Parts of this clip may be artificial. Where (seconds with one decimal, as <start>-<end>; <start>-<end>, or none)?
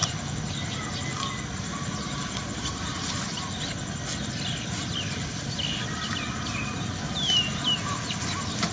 none